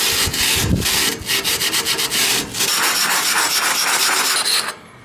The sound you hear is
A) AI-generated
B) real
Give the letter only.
B